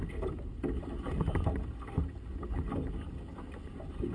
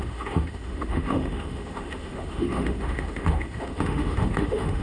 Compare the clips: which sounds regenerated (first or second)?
second